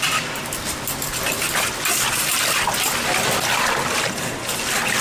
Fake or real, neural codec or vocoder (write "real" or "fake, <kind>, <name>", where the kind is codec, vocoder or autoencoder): real